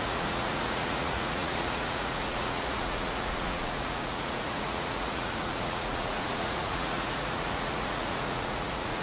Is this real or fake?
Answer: fake